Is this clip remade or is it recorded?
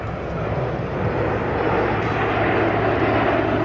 recorded